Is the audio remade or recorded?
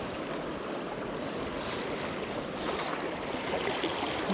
recorded